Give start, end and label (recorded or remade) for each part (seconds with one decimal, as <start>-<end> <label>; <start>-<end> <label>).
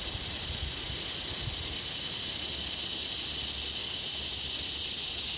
0.0-5.4 recorded